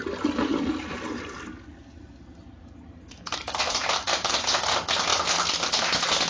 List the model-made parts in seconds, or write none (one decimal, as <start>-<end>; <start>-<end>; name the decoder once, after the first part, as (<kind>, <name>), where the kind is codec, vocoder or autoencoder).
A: none